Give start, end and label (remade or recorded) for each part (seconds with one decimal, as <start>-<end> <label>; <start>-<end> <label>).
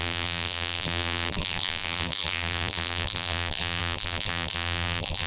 0.0-5.3 remade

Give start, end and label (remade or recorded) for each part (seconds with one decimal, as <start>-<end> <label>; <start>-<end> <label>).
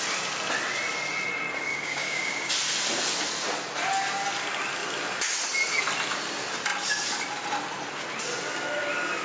0.0-1.7 recorded; 1.7-2.5 remade; 2.5-9.2 recorded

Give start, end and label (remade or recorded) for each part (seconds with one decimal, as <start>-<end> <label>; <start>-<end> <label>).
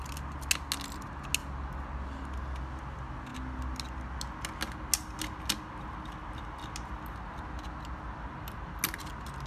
0.0-9.5 recorded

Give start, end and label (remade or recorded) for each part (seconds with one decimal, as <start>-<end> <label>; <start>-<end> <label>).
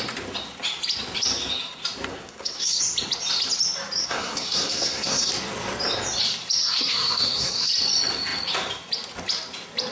0.0-2.1 recorded; 2.1-2.8 remade; 2.8-4.0 recorded; 4.0-5.3 remade; 5.3-6.6 recorded; 6.6-7.7 remade; 7.7-9.9 recorded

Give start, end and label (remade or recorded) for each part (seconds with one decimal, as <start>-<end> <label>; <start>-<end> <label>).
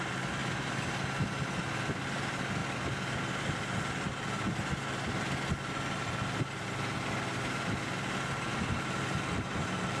0.0-10.0 recorded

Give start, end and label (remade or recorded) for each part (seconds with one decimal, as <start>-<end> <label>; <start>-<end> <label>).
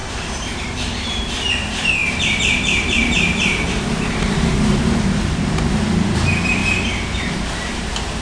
0.0-6.6 remade; 6.6-7.2 recorded; 7.2-8.2 remade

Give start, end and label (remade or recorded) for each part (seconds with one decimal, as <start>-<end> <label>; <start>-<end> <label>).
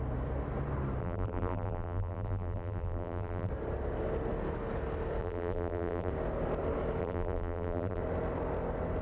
0.0-1.0 recorded; 1.0-3.5 remade; 3.5-5.2 recorded; 5.2-6.1 remade; 6.1-7.0 recorded; 7.0-8.0 remade; 8.0-9.0 recorded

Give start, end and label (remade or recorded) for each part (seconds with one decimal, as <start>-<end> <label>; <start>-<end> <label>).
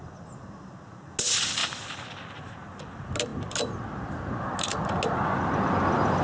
0.0-6.2 recorded